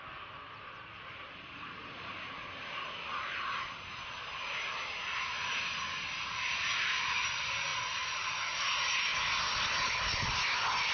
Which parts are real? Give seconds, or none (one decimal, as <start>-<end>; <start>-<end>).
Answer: 0.0-10.9